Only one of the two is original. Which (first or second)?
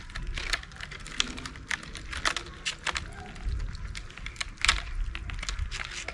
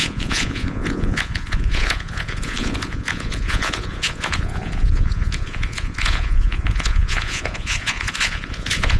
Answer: first